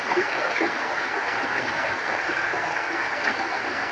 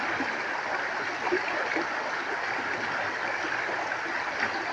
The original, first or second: second